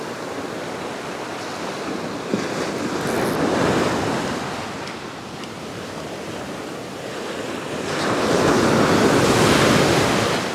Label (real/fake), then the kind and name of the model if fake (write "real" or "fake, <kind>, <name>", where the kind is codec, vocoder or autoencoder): real